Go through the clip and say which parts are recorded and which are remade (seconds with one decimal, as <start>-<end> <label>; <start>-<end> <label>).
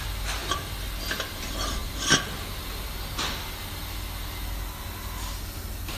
0.0-6.0 recorded